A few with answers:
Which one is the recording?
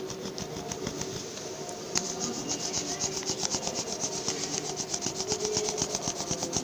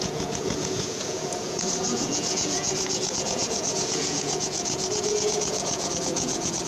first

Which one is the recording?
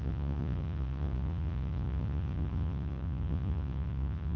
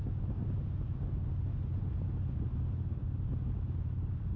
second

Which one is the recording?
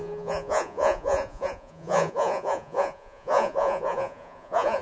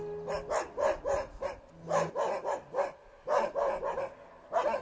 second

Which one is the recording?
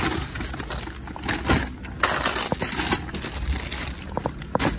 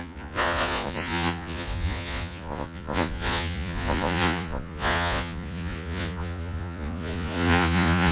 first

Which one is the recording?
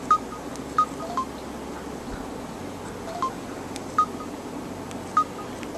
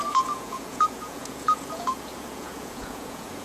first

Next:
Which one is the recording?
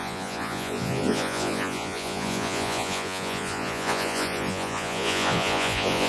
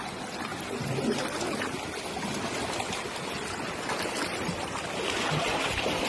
second